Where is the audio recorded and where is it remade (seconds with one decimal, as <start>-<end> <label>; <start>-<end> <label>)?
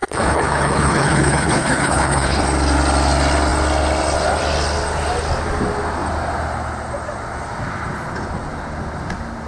0.0-2.4 remade; 2.4-9.5 recorded